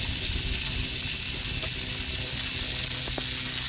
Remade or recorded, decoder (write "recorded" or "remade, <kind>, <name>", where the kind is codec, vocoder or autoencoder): recorded